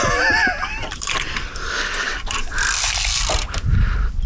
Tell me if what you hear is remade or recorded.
recorded